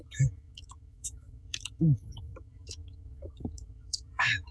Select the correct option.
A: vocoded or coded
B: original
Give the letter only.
A